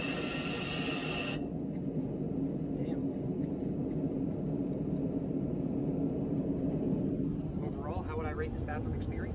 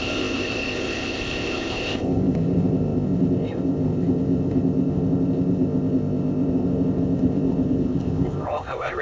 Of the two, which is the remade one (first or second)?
second